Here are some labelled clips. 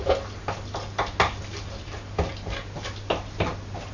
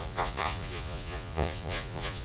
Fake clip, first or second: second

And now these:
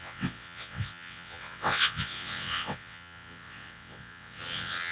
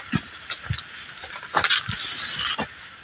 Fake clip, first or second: first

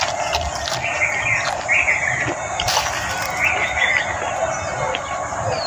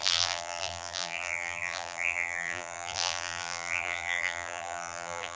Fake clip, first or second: second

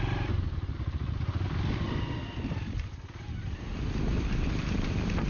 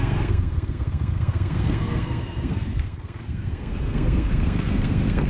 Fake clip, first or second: second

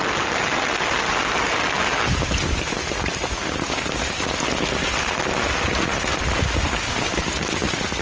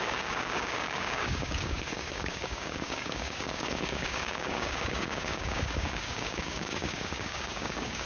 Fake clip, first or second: second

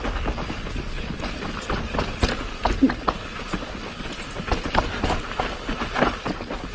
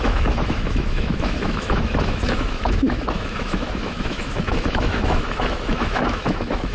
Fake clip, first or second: second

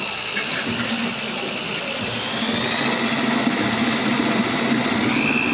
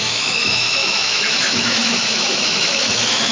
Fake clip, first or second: second